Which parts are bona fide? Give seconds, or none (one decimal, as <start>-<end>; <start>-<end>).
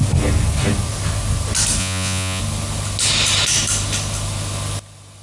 0.0-1.8; 2.4-5.2